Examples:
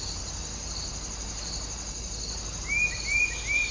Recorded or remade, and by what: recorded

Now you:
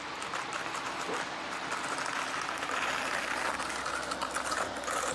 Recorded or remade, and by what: recorded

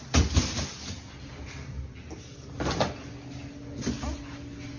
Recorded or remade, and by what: recorded